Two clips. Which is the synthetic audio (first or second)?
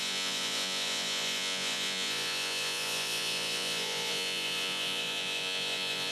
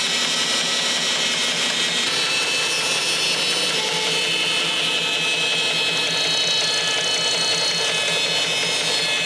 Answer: first